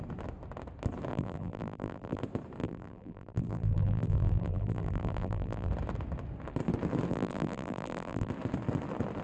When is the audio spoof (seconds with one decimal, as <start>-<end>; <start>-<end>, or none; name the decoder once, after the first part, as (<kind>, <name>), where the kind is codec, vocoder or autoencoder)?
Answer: 1.1-2.2 (vocoder, BigVGAN v2); 2.6-5.7; 7.1-8.3